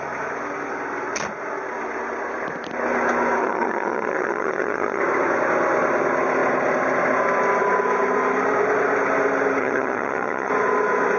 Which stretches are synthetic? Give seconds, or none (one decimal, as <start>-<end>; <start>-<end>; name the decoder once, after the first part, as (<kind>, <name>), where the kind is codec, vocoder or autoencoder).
3.4-5.0 (vocoder, HiFi-GAN); 9.6-10.5